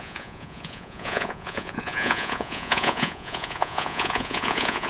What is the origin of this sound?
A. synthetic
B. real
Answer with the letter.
A